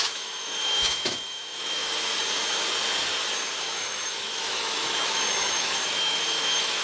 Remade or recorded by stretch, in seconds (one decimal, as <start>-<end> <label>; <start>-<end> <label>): 0.0-1.8 remade; 1.8-3.6 recorded; 3.6-6.8 remade